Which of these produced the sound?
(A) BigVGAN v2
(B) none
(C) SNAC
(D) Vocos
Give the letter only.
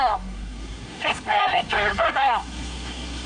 C